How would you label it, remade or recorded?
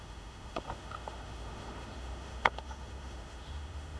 remade